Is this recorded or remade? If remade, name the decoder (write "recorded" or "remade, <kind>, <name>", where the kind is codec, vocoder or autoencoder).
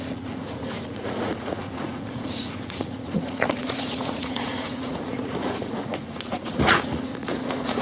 remade, vocoder, Vocos